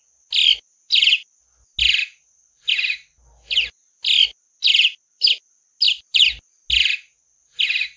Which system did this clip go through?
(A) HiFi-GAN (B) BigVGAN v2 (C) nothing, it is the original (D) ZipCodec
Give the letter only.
C